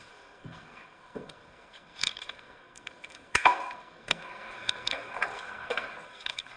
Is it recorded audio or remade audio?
remade